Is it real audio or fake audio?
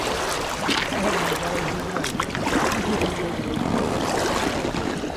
real